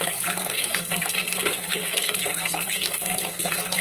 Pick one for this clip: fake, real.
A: fake